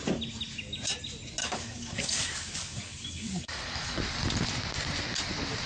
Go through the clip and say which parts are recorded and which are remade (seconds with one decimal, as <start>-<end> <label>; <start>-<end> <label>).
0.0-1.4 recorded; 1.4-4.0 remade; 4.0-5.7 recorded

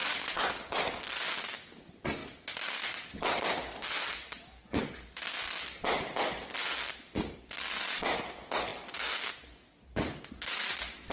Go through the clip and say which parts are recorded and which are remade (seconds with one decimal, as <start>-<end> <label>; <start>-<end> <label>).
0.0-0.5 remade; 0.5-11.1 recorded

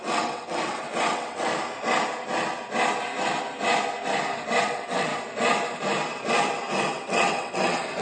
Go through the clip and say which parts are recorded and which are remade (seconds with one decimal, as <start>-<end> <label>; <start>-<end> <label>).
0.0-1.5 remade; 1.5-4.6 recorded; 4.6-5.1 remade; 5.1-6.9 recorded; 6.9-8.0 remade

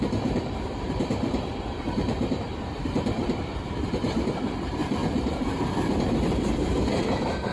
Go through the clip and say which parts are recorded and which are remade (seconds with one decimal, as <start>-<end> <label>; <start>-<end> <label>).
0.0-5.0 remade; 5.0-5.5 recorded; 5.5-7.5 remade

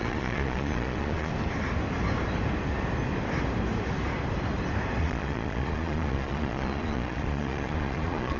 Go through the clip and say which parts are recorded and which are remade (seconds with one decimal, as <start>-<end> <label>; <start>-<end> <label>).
0.0-1.3 remade; 1.3-5.0 recorded; 5.0-8.4 remade

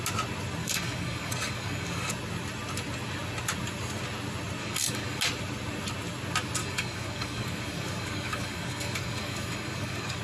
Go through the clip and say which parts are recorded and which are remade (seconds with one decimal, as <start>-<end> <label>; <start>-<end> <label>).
0.0-0.6 recorded; 0.6-2.1 remade; 2.1-4.6 recorded; 4.6-5.2 remade; 5.2-6.6 recorded; 6.6-10.2 remade

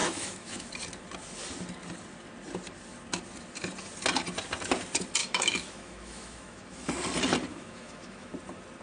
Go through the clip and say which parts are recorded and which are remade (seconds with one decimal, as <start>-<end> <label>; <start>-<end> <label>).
0.0-0.7 remade; 0.7-5.2 recorded; 5.2-6.9 remade; 6.9-7.5 recorded; 7.5-8.3 remade; 8.3-8.8 recorded